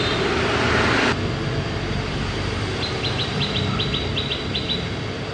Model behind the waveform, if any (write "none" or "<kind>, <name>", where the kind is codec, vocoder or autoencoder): vocoder, BigVGAN v2